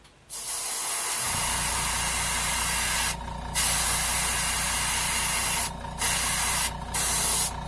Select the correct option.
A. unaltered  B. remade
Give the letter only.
A